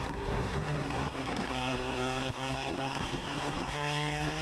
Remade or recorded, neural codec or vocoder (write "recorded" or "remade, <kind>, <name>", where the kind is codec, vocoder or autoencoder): remade, codec, SNAC